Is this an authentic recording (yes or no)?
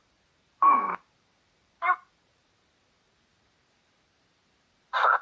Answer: no